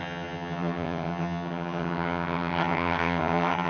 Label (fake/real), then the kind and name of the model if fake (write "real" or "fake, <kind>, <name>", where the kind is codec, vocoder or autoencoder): fake, vocoder, HiFi-GAN